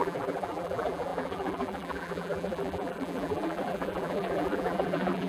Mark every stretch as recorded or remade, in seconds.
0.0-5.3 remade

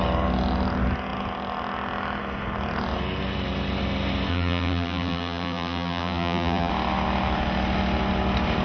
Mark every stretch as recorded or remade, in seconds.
0.0-4.3 recorded; 4.3-6.7 remade; 6.7-8.6 recorded